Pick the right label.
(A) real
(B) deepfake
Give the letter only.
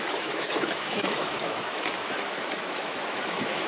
B